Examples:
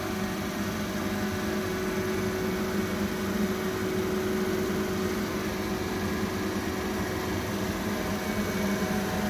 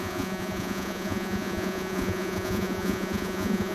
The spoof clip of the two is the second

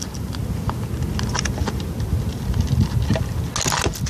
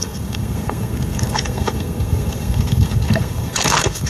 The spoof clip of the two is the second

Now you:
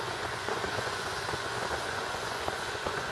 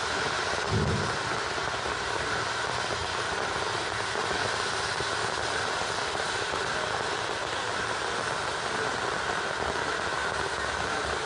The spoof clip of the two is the first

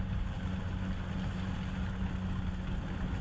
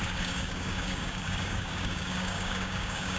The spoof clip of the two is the second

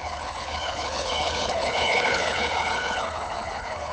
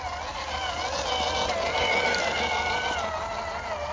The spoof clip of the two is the first